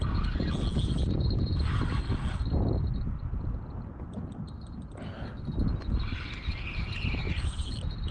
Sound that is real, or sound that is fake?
real